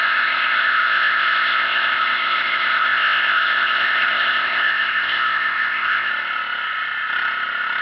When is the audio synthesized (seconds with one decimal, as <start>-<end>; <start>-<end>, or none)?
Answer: 0.0-6.1